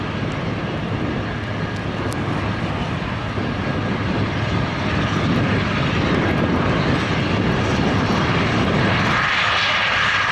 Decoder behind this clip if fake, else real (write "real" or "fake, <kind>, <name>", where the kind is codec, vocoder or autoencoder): real